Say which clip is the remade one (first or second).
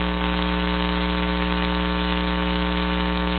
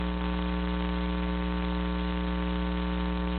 first